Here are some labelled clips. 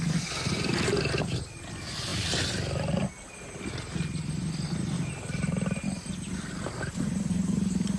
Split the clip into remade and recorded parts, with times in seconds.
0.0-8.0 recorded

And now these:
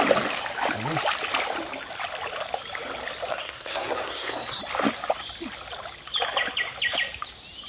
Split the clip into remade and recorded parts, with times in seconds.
0.0-3.3 recorded; 3.3-4.6 remade; 4.6-7.7 recorded

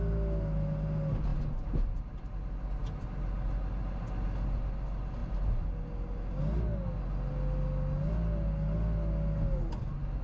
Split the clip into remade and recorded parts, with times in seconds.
0.0-10.2 recorded

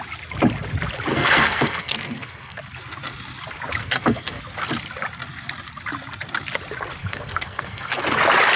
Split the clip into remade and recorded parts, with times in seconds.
0.0-1.1 recorded; 1.1-2.6 remade; 2.6-3.8 recorded; 3.8-4.4 remade; 4.4-7.0 recorded; 7.0-8.0 remade; 8.0-8.6 recorded

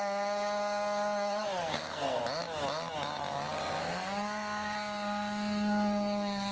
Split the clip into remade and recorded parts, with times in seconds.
0.0-2.2 remade; 2.2-3.8 recorded; 3.8-6.5 remade

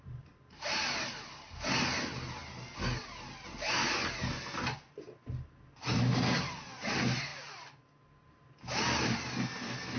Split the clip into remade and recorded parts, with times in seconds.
0.0-10.0 recorded